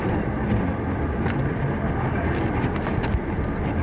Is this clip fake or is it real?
real